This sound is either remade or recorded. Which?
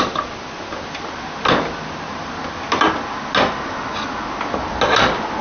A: recorded